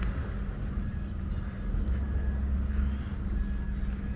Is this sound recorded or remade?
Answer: recorded